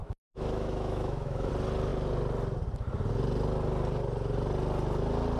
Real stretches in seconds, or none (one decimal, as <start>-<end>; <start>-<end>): 1.5-5.4